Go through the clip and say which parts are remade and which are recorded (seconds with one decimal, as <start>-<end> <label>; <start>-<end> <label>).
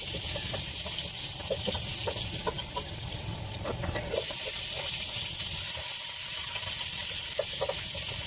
0.0-2.0 remade; 2.0-2.7 recorded; 2.7-8.3 remade